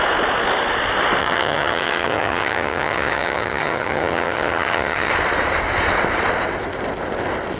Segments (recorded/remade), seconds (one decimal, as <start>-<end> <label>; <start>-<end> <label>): 0.0-1.2 recorded; 1.2-5.1 remade; 5.1-7.6 recorded